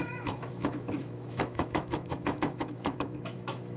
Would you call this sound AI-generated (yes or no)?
yes